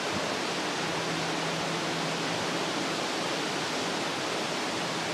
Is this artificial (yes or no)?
no